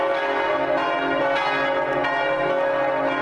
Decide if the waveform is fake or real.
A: real